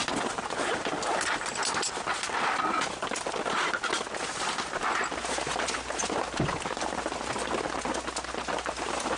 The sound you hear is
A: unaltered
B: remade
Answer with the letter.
A